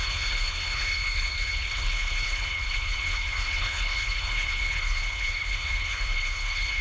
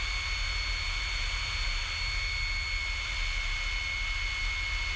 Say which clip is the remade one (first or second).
first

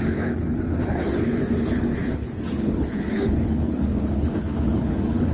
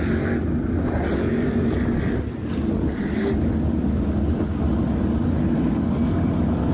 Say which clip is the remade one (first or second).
first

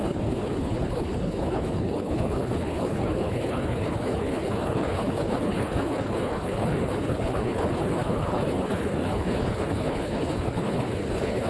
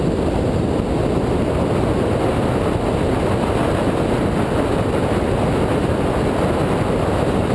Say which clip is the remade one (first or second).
first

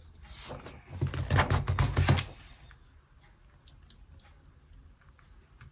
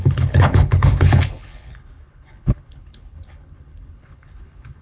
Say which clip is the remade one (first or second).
second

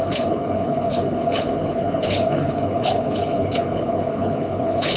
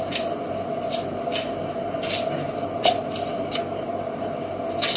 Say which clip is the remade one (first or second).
first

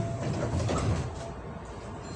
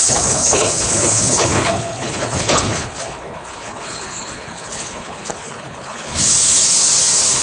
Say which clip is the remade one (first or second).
second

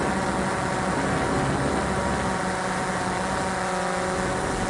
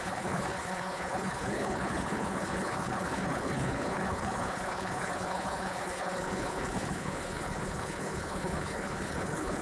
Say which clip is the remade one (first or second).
second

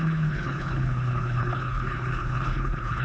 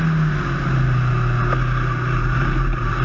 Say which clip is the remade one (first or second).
first